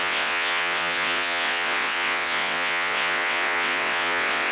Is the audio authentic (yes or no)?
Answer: no